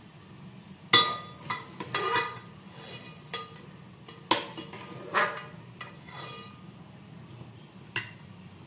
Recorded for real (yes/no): yes